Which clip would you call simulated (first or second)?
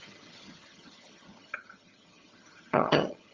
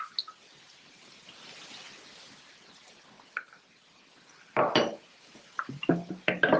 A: first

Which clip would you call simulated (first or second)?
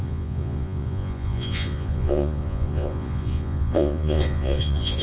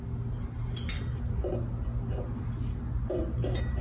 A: first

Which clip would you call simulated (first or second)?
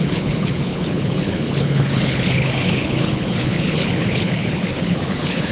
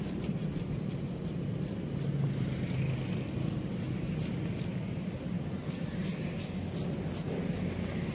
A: first